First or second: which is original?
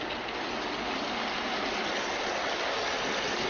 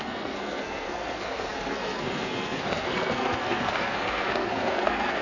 first